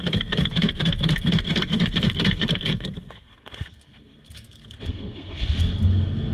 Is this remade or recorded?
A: remade